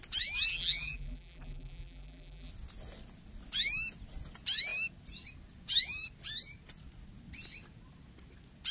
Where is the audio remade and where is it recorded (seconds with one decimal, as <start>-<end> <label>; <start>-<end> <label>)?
0.0-0.5 recorded; 0.5-2.5 remade; 2.5-8.7 recorded